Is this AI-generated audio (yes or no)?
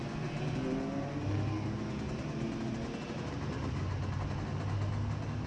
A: no